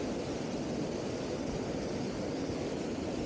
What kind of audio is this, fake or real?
real